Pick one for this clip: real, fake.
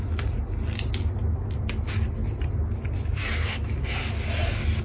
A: real